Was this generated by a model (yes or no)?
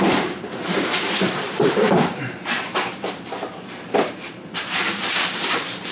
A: yes